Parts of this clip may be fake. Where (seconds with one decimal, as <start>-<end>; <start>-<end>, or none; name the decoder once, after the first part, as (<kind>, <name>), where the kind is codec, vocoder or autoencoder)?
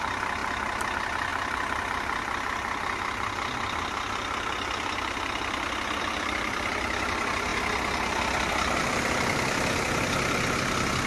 0.0-0.4 (vocoder, BigVGAN v2); 0.9-1.3; 6.0-7.5; 8.8-11.1